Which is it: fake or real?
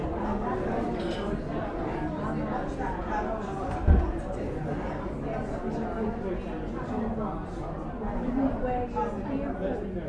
real